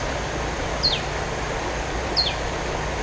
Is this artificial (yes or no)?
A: no